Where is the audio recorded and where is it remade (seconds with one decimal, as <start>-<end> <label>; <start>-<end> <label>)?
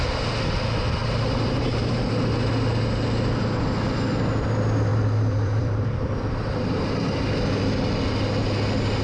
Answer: 0.0-1.0 recorded; 1.0-2.1 remade; 2.1-4.9 recorded; 4.9-7.2 remade; 7.2-9.0 recorded